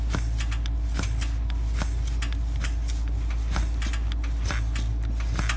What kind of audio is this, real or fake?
real